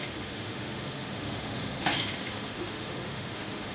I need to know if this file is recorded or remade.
remade